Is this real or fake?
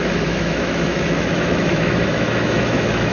fake